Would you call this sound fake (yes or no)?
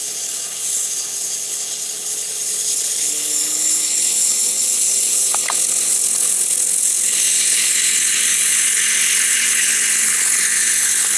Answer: yes